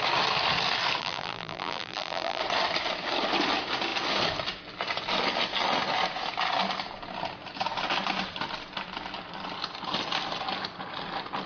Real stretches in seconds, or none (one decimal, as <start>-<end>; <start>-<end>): 0.0-1.0; 2.4-11.5